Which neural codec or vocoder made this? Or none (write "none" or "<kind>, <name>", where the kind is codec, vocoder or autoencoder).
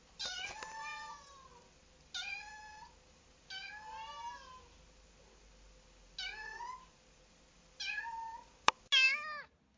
none